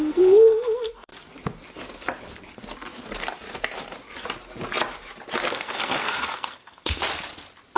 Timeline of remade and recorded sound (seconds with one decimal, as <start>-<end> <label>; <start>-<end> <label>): 0.0-1.1 remade; 1.1-5.5 recorded; 5.5-7.0 remade; 7.0-7.8 recorded